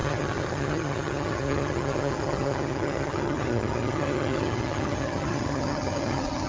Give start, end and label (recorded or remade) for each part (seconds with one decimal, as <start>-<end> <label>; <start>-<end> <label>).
0.0-6.5 remade